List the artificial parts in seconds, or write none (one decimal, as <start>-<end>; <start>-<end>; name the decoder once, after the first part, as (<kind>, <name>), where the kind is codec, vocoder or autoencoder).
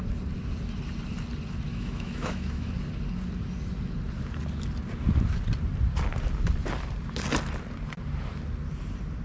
1.7-2.7 (autoencoder, DAC-VAE)